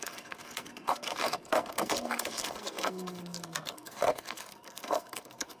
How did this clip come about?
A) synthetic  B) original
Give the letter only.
A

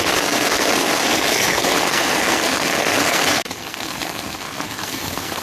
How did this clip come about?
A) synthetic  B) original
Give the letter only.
A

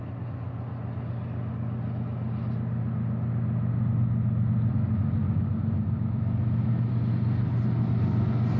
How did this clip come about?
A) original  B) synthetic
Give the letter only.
A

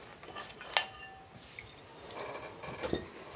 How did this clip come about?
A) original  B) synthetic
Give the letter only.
A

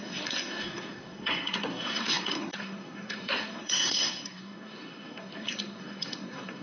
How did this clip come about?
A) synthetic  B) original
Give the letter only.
A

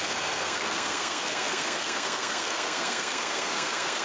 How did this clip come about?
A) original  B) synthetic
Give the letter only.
B